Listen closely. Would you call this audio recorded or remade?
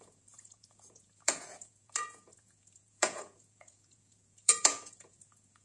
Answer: remade